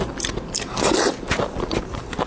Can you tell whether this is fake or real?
real